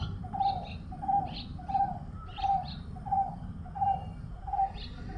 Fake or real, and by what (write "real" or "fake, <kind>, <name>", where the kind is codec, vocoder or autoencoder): real